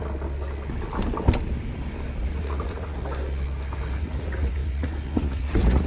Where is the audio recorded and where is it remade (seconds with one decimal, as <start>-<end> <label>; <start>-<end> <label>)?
0.0-2.2 recorded; 2.2-3.0 remade; 3.0-4.0 recorded; 4.0-5.9 remade